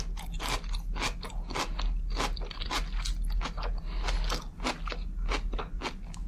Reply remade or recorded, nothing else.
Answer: recorded